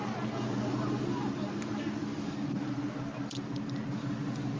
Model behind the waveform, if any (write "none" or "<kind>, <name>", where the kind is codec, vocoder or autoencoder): none